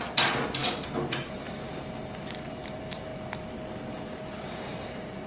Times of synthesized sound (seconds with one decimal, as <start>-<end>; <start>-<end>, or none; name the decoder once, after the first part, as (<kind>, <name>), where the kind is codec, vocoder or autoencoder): 0.0-3.1 (vocoder, BigVGAN v2); 3.9-5.3